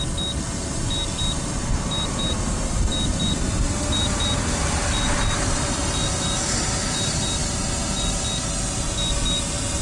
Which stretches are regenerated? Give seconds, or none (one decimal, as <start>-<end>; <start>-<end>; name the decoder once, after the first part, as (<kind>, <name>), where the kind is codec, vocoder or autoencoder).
none